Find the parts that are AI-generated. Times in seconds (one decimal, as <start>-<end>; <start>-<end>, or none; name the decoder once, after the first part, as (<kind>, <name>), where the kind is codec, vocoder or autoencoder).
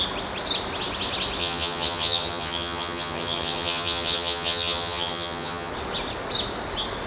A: 1.4-5.7 (vocoder, HiFi-GAN)